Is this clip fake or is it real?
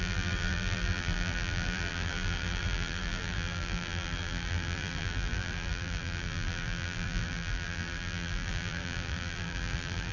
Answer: fake